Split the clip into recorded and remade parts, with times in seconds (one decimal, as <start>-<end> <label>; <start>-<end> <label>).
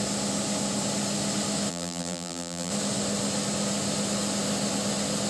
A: 0.0-1.7 recorded; 1.7-2.7 remade; 2.7-5.3 recorded